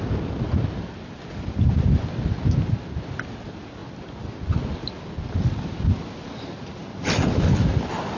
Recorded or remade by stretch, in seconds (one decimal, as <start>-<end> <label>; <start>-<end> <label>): 0.0-8.2 recorded